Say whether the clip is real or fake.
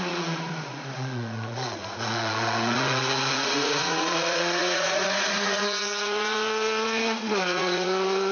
fake